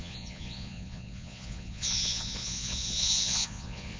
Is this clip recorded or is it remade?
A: remade